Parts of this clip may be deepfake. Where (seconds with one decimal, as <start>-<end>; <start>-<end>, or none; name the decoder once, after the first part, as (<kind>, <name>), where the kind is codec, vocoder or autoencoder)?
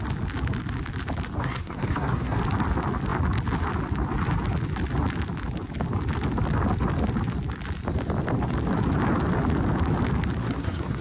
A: 1.4-2.4 (codec, SNAC); 10.4-11.0